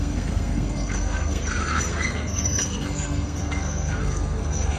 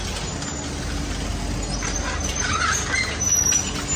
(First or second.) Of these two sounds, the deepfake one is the first